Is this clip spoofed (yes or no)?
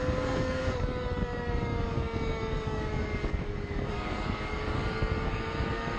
yes